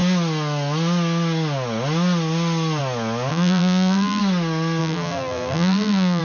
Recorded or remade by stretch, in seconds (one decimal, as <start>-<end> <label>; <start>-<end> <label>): 0.0-3.3 recorded; 3.3-4.2 remade; 4.2-4.8 recorded; 4.8-6.2 remade